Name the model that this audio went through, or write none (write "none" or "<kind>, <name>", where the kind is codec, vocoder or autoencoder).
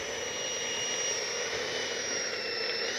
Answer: none